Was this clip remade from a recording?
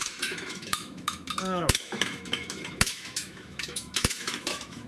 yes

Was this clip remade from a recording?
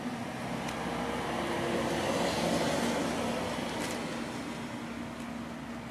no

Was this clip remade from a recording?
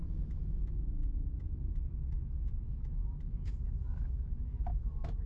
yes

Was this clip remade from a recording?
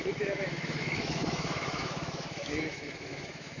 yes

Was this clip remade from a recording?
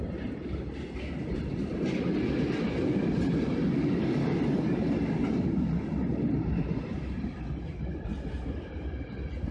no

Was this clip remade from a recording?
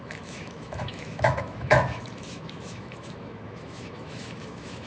yes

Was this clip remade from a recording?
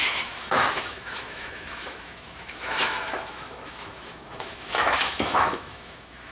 yes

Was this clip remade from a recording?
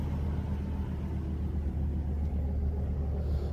no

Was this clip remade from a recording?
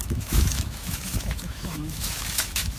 yes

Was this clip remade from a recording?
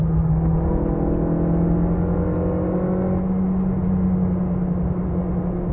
no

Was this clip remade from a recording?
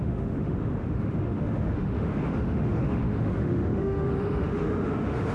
yes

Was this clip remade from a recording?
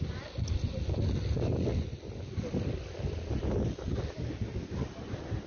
no